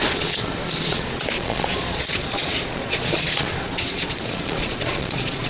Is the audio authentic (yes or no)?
no